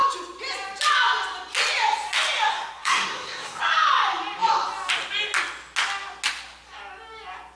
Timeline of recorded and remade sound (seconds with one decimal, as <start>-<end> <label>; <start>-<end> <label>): 0.0-2.5 recorded; 2.5-3.6 remade; 3.6-7.6 recorded